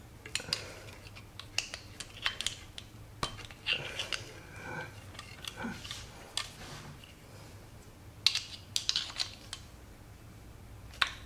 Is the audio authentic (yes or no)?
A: yes